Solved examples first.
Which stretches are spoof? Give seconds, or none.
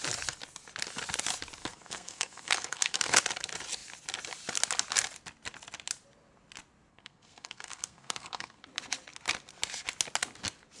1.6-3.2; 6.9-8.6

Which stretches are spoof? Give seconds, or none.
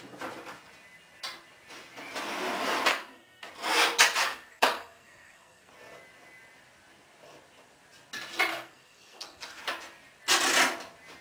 2.9-3.5; 4.2-5.7; 8.5-9.6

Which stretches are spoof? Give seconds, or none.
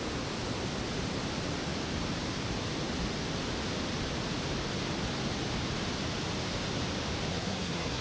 7.3-8.0